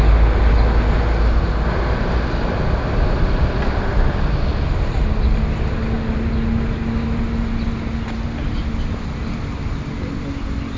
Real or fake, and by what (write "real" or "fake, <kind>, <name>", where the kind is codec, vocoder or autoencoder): real